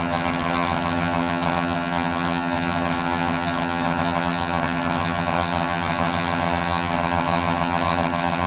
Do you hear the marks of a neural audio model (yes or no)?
yes